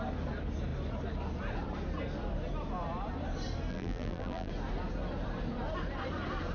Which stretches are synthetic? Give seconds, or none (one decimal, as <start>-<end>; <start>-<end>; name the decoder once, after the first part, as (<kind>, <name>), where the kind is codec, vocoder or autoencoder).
3.7-4.5 (vocoder, BigVGAN v2)